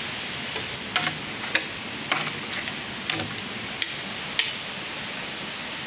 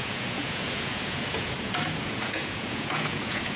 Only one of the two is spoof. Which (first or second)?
second